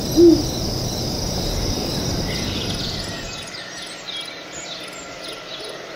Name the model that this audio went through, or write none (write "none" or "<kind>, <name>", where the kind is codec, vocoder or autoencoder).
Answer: none